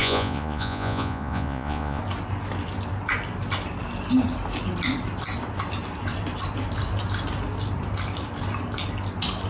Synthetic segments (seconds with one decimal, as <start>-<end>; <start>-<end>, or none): 0.0-2.0